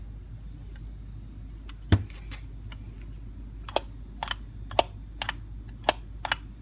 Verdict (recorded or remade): recorded